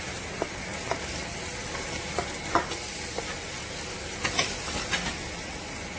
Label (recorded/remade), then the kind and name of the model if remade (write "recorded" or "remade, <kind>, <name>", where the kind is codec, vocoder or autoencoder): recorded